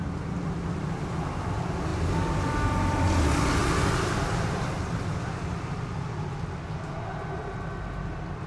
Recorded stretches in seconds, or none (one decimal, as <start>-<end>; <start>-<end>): 0.0-8.5